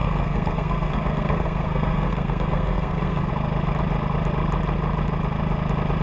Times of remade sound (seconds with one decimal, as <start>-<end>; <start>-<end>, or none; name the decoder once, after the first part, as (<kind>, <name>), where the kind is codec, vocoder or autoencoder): 0.0-3.3 (codec, SNAC)

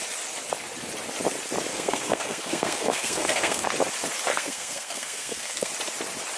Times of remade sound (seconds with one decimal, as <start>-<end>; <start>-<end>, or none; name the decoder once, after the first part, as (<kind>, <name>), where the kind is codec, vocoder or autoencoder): 1.7-3.7 (codec, SNAC); 4.3-5.7